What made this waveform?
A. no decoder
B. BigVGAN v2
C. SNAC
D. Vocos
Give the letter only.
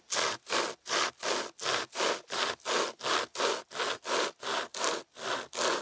A